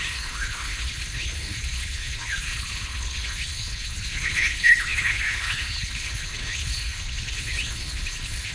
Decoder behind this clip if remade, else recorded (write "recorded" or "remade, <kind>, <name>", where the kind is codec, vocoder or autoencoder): remade, codec, HILCodec